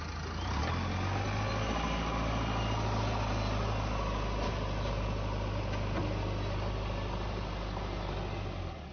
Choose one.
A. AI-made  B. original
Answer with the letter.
B